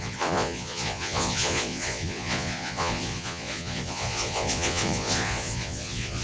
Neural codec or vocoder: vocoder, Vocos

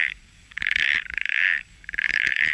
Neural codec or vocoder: codec, DAC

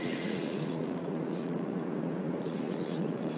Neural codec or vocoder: vocoder, Vocos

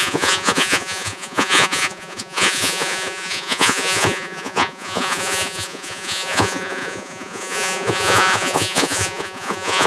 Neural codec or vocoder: vocoder, Vocos